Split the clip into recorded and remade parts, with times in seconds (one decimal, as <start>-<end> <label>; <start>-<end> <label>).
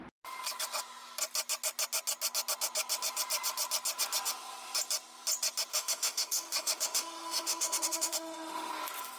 0.0-5.7 recorded; 5.7-8.7 remade; 8.7-9.2 recorded